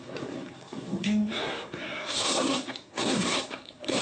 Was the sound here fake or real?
fake